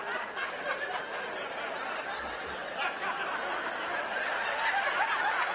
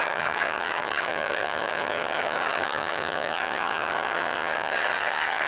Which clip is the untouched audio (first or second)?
first